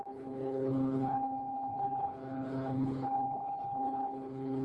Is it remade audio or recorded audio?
remade